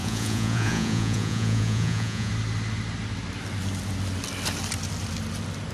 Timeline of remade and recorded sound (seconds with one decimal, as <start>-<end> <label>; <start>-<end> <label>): 0.0-2.3 remade; 2.3-5.7 recorded